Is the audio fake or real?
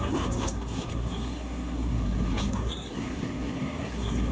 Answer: fake